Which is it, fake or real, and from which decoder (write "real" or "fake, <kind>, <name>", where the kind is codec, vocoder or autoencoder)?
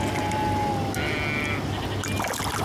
real